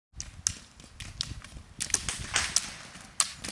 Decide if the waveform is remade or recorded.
recorded